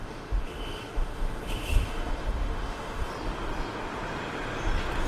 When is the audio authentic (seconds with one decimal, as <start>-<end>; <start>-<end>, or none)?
3.1-5.1